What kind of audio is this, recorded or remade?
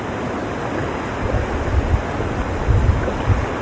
recorded